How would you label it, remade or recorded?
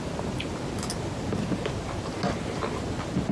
recorded